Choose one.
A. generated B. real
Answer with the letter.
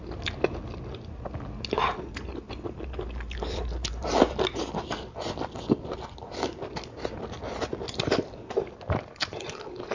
B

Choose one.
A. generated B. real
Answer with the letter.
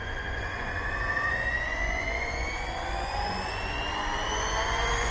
A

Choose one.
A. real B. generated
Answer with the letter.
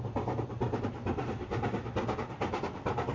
A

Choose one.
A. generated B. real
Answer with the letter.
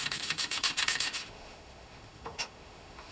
A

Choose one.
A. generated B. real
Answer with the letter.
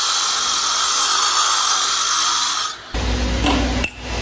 B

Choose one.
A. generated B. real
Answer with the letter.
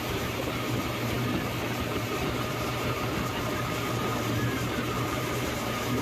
A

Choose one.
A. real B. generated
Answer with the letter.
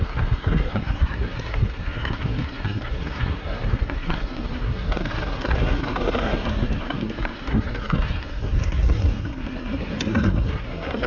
B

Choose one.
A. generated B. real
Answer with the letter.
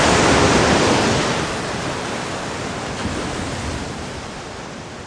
B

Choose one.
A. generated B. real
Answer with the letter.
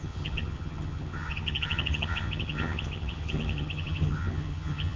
A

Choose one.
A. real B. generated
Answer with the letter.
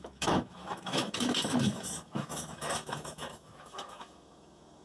B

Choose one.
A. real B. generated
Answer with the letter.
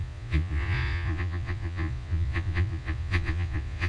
B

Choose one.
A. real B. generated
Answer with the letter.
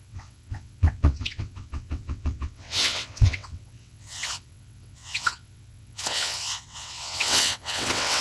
B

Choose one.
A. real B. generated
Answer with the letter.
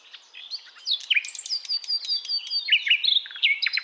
A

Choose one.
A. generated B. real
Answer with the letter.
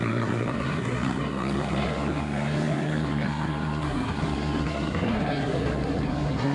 A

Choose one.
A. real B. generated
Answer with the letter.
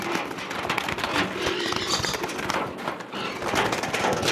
A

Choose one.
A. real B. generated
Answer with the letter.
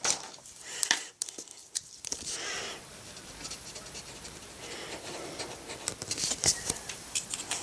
B